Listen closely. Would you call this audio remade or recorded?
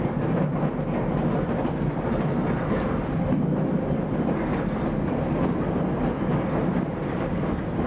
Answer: recorded